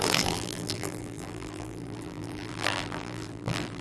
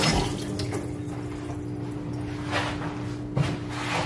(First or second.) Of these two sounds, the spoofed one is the first